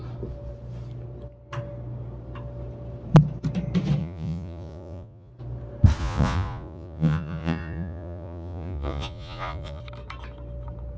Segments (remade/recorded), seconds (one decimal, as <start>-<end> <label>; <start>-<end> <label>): 0.0-4.0 recorded; 4.0-5.3 remade; 5.3-6.0 recorded; 6.0-9.8 remade; 9.8-11.0 recorded